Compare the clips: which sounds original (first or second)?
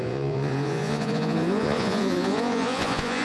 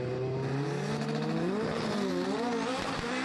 second